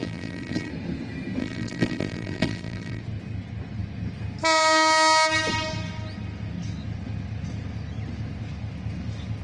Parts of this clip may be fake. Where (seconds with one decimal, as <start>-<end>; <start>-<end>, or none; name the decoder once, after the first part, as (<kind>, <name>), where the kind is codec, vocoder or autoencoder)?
0.0-0.7 (vocoder, BigVGAN v2); 1.4-3.0